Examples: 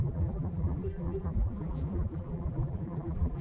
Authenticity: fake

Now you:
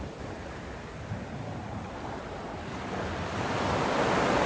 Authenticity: real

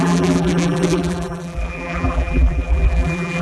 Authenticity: fake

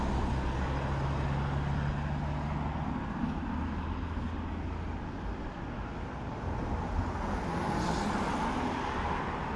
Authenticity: real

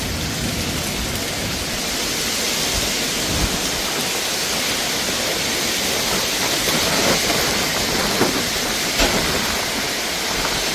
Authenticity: real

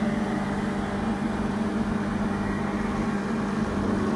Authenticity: real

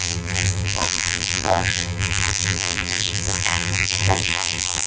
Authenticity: fake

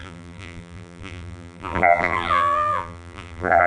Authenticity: fake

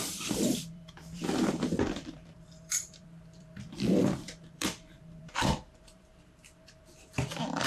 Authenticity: fake